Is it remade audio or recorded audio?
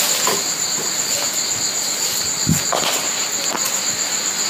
recorded